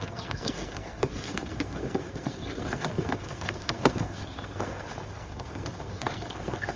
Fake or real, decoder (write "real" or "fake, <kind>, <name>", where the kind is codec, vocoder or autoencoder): fake, codec, SNAC